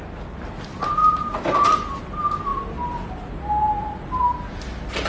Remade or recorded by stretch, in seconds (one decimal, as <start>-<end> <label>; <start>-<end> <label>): 0.0-5.1 recorded